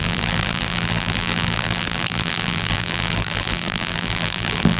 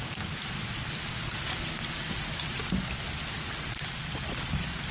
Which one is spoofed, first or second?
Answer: first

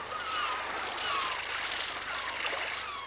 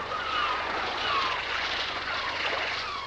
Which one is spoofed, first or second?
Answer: second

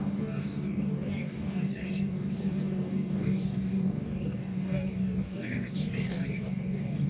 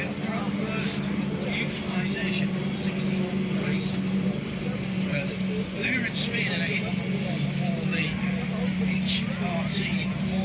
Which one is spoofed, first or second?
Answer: first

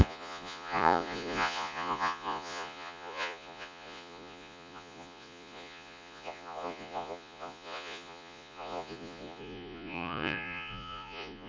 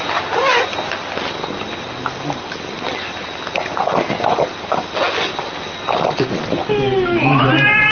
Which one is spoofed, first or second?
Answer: first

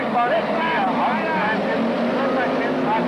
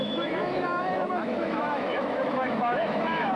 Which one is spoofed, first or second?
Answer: second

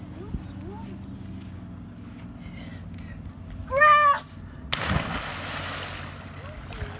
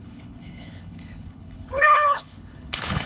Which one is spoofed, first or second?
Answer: second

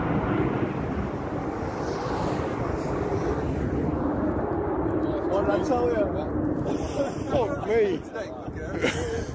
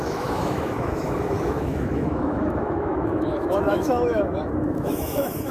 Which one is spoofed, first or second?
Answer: second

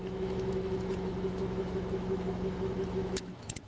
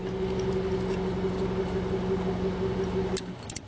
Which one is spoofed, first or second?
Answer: first